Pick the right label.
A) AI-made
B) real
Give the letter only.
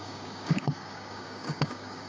A